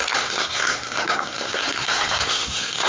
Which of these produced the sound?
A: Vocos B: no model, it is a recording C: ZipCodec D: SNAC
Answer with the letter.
D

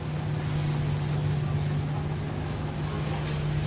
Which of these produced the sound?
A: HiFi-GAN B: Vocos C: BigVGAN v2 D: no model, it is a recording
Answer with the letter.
D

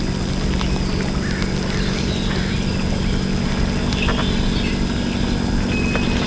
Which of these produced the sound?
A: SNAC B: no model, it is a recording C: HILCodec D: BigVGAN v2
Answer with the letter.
B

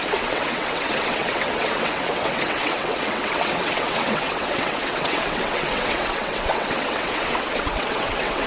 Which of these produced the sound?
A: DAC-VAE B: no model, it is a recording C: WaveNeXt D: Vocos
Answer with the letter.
C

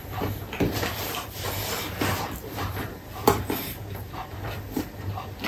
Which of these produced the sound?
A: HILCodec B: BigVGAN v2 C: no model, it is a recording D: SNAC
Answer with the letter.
B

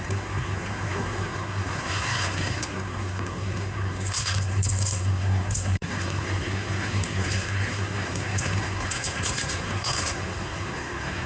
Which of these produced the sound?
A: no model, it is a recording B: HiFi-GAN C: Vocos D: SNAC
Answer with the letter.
D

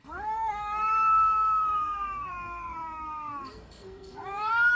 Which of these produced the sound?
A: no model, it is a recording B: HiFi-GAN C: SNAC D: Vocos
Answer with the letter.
C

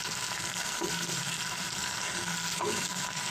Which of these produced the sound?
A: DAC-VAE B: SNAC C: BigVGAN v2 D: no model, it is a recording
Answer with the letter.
B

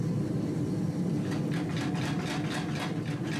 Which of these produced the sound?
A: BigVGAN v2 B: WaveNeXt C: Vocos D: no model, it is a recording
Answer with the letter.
D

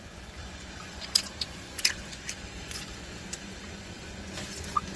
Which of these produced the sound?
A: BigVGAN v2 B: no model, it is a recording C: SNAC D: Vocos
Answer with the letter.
D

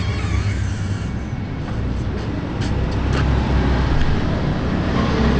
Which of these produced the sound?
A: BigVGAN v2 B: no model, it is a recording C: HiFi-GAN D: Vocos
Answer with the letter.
B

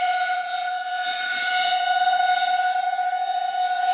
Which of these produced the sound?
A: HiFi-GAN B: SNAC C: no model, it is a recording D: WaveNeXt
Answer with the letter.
D